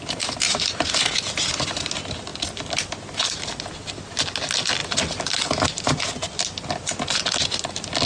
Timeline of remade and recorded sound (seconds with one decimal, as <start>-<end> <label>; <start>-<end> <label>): 0.0-2.3 recorded; 2.3-3.3 remade; 3.3-4.8 recorded; 4.8-5.3 remade; 5.3-8.1 recorded